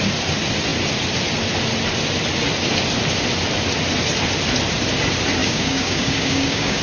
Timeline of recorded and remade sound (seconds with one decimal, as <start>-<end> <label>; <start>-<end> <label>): 0.0-5.4 recorded; 5.4-6.8 remade